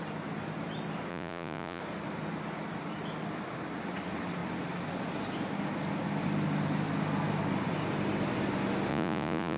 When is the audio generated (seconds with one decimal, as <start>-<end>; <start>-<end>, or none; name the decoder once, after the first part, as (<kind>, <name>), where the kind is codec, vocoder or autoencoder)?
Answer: 1.1-1.8 (vocoder, Vocos); 8.9-9.6